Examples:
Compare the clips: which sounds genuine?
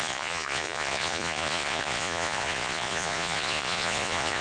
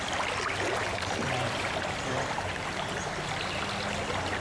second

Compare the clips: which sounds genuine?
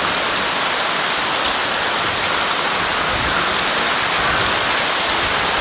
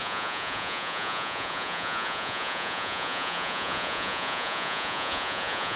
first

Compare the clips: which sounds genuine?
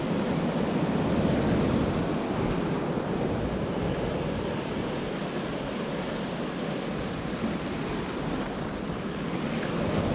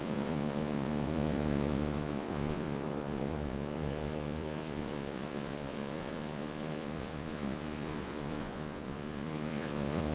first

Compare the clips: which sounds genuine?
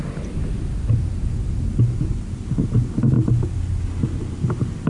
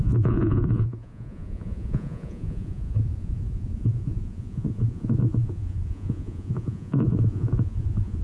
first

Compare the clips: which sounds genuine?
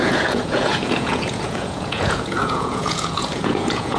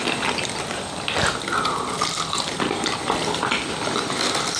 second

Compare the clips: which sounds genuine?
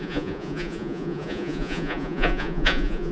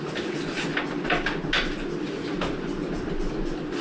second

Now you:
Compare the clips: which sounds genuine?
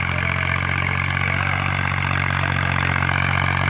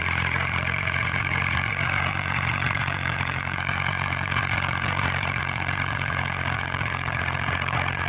first